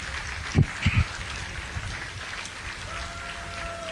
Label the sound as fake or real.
real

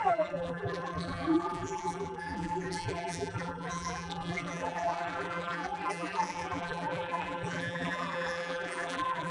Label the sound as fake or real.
fake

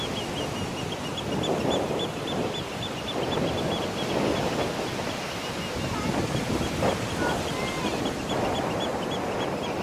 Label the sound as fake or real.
real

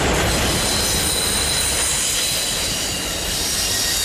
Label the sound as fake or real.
real